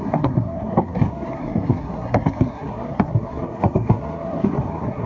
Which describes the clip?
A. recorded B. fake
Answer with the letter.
B